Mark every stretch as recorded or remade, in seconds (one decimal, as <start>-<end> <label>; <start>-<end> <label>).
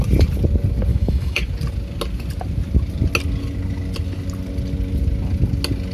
0.0-0.9 recorded; 0.9-1.4 remade; 1.4-5.9 recorded